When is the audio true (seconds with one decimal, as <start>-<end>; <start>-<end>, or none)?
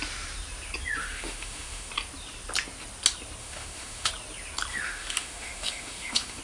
0.0-1.0; 1.9-3.4; 4.1-4.7